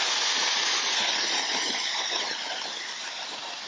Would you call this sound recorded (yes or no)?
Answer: yes